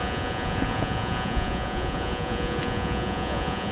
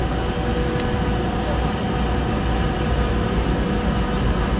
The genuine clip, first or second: second